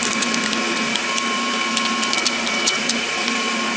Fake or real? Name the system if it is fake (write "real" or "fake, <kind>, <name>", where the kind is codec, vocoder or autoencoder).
fake, vocoder, BigVGAN v2